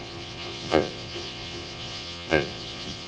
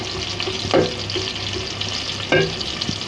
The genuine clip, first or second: second